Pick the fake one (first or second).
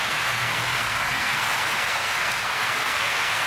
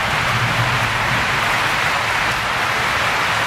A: first